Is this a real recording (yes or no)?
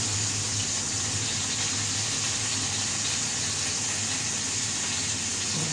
yes